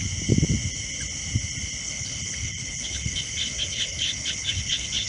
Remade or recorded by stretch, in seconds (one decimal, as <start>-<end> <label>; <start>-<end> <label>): 0.0-1.8 recorded; 1.8-5.1 remade